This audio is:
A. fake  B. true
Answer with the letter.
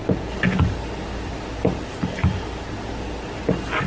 B